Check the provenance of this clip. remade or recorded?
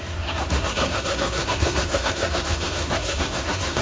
remade